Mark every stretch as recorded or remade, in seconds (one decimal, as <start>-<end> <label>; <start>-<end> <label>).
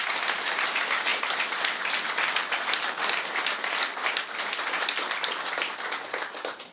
0.0-1.1 recorded; 1.1-1.8 remade; 1.8-6.7 recorded